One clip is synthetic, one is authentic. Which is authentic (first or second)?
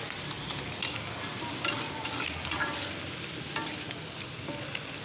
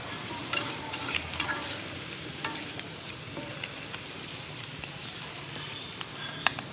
first